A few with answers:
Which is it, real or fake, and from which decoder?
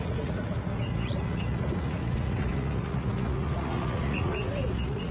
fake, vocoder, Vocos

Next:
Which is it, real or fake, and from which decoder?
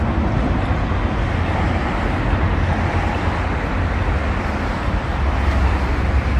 real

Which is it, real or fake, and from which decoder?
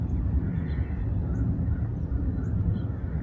real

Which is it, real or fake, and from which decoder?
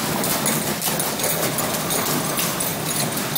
real